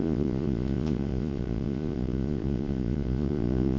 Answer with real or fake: fake